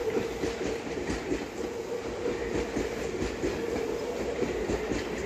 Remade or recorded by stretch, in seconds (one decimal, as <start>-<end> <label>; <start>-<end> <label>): 0.0-5.3 recorded